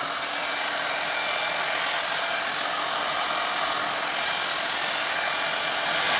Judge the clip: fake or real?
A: fake